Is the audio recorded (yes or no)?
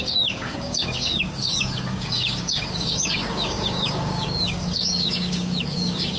no